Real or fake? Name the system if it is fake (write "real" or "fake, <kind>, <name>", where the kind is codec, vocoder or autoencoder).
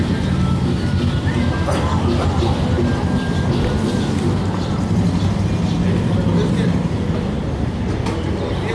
real